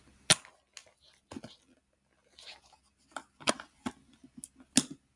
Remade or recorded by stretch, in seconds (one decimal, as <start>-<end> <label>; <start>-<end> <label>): 0.0-5.2 recorded